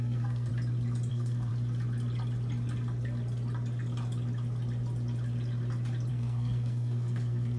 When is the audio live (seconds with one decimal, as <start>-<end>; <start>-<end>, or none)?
0.5-1.1; 1.5-6.1